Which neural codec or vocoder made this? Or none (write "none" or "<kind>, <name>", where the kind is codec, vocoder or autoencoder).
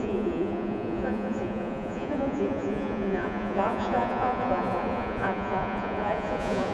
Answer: vocoder, Vocos